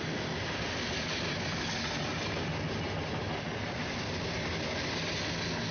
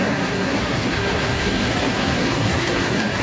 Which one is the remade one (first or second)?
second